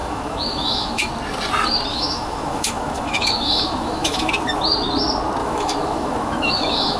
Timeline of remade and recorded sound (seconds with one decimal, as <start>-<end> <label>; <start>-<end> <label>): 0.0-1.1 remade; 1.1-1.9 recorded; 1.9-4.3 remade; 4.3-5.4 recorded; 5.4-7.0 remade